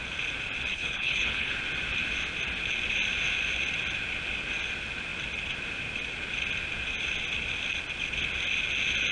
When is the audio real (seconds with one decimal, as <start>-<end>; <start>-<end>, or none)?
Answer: 0.0-0.7; 1.5-9.1